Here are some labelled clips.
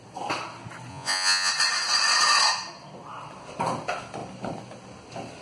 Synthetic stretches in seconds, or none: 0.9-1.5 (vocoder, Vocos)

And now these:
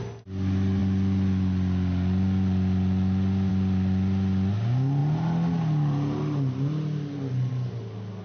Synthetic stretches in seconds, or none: none

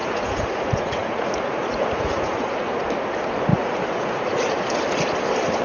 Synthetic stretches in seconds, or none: 0.0-2.9 (vocoder, Vocos); 3.5-4.5